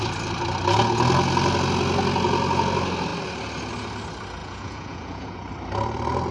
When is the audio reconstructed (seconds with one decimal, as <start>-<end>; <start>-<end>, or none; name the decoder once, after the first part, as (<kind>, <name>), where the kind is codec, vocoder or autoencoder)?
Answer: 4.4-5.5 (vocoder, Vocos)